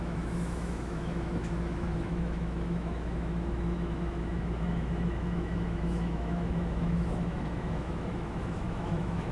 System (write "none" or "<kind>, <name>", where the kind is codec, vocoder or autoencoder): autoencoder, DAC-VAE